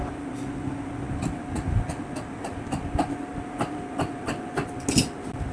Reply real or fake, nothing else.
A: real